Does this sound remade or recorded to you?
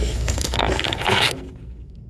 remade